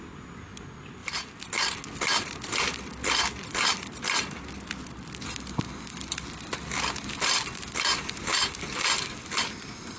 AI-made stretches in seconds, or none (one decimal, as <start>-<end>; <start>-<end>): none